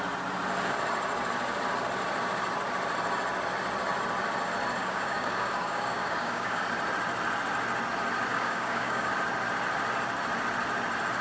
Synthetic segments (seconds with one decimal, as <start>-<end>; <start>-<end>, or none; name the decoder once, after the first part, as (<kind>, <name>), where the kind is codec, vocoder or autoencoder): 4.8-6.6 (codec, DAC); 8.3-9.1